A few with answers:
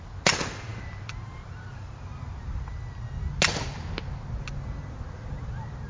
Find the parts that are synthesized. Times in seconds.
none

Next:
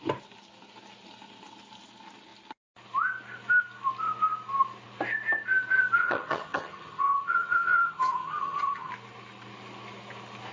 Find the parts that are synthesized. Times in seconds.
6.0-8.9 (vocoder, HiFi-GAN)

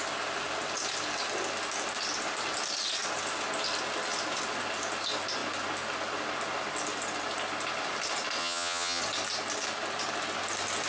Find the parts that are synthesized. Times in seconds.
8.4-9.0 (vocoder, HiFi-GAN)

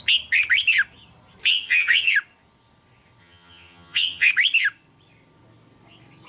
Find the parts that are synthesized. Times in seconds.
1.5-2.1 (vocoder, HiFi-GAN); 3.2-4.3

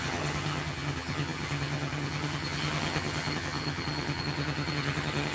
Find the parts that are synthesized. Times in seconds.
0.0-5.3 (vocoder, HiFi-GAN)

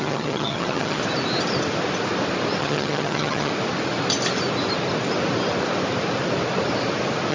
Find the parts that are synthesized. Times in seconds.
0.0-1.0 (vocoder, HiFi-GAN); 2.6-3.5

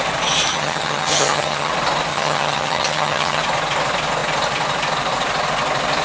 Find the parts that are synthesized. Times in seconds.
0.5-1.7 (vocoder, HiFi-GAN); 2.1-3.4

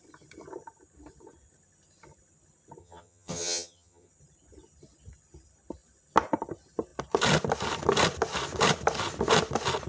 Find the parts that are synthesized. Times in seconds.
2.8-4.1 (vocoder, HiFi-GAN)